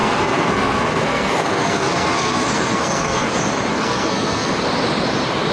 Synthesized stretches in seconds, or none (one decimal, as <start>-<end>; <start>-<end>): 0.0-3.3; 3.7-4.5